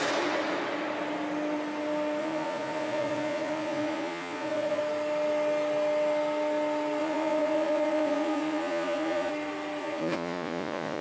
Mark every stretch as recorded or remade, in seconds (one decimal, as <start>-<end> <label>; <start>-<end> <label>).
0.0-2.2 recorded; 2.2-4.8 remade; 4.8-7.0 recorded; 7.0-9.3 remade; 9.3-9.8 recorded; 9.8-11.0 remade